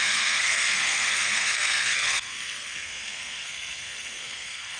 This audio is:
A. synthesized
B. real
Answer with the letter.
A